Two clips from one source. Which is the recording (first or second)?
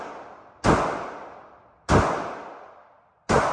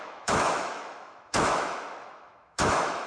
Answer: first